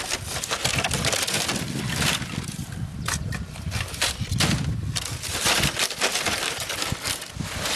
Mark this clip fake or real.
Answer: real